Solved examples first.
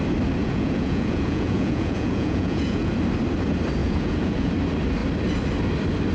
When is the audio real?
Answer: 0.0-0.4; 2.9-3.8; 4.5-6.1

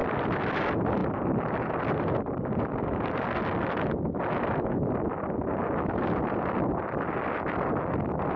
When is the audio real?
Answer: 0.0-8.4

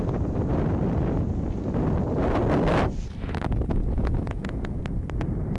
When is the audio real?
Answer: 0.0-3.8; 4.8-5.6

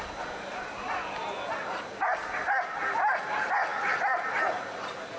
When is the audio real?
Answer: 0.0-5.2